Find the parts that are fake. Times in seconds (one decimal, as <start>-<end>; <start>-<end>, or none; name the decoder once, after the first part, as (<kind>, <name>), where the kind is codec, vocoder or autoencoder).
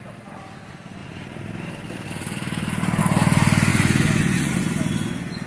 3.7-5.5 (vocoder, Vocos)